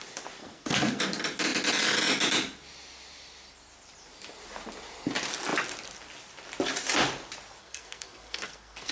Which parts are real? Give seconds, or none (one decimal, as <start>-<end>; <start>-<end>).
0.0-0.4; 1.0-7.6